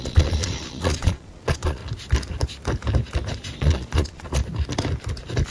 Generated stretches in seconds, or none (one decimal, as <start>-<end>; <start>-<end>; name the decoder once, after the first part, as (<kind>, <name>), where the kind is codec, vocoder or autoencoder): 0.0-1.8 (vocoder, Vocos); 3.6-4.4